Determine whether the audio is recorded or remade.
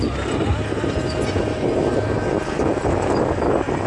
recorded